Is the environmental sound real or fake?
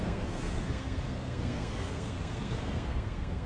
fake